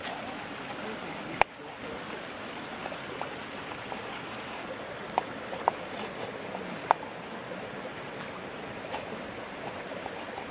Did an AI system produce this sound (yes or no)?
no